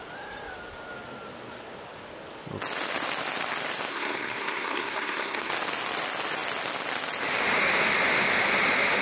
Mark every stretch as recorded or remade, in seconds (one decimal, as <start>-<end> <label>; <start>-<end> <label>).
0.0-3.9 recorded; 3.9-5.5 remade; 5.5-9.0 recorded